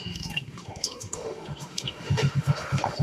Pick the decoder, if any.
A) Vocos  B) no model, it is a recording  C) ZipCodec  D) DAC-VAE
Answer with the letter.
D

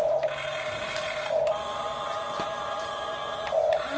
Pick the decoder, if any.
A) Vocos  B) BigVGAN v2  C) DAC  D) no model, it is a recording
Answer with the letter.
D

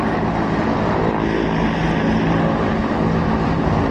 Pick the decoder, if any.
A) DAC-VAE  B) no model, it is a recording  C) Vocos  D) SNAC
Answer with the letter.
B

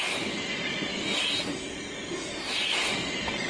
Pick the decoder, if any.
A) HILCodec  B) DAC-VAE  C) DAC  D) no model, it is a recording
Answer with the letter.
D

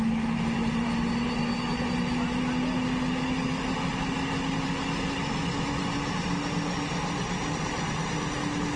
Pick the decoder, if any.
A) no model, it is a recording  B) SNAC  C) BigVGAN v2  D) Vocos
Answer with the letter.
A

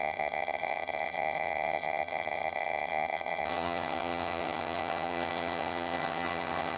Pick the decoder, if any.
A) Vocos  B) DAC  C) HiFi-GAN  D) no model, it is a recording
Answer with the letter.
C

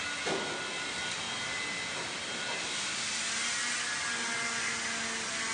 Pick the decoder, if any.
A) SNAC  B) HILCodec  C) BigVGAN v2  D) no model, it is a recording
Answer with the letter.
D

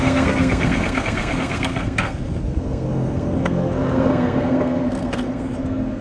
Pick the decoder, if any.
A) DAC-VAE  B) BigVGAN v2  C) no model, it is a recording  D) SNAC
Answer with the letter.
D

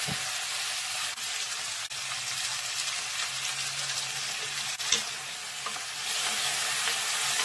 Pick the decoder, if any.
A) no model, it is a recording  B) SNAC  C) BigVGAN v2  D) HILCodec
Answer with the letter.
A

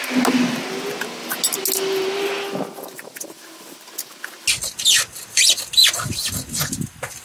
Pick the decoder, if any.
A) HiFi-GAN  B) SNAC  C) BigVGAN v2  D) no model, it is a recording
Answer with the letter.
D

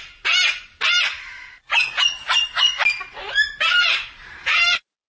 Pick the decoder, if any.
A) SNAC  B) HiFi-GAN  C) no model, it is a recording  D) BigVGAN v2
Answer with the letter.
C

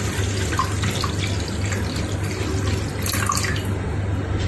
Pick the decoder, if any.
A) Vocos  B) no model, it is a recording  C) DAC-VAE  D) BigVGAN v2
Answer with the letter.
B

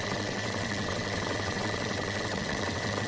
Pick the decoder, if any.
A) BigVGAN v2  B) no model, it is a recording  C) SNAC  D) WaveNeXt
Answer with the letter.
D